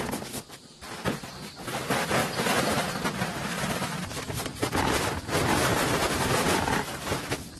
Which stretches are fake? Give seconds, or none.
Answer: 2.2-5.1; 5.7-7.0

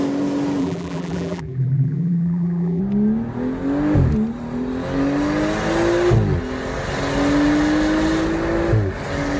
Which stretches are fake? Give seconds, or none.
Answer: 0.6-2.8